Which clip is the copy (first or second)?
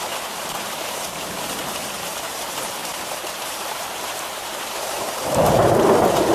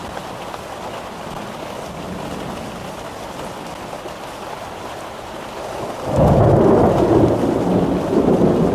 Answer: first